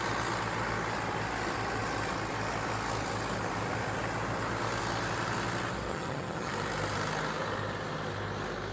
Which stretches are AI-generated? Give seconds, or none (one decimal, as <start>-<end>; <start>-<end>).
5.9-6.5